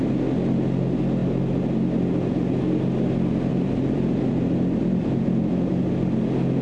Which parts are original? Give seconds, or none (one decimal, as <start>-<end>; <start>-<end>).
0.0-3.5; 5.7-6.6